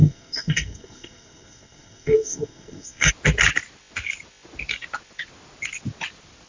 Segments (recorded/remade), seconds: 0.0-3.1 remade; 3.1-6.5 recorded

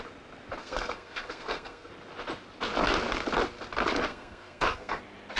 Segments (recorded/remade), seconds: 0.0-0.6 recorded; 0.6-1.9 remade; 1.9-4.1 recorded; 4.1-5.0 remade; 5.0-5.4 recorded

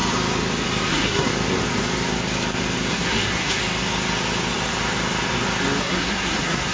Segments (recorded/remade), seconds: 0.0-0.9 recorded; 0.9-1.3 remade; 1.3-2.9 recorded; 2.9-3.6 remade; 3.6-5.8 recorded; 5.8-6.7 remade